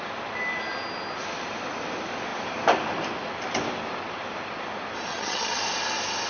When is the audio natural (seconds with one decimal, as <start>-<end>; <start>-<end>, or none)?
0.0-5.1; 5.6-6.3